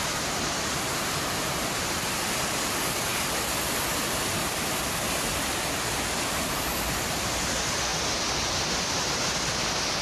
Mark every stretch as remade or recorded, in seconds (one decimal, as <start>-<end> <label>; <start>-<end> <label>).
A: 0.0-10.0 recorded